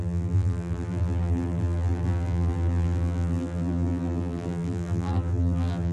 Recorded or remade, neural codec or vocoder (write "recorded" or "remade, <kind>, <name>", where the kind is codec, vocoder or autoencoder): remade, vocoder, BigVGAN v2